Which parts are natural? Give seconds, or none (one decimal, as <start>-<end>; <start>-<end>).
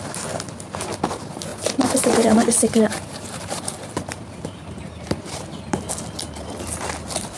0.0-1.5; 5.9-7.4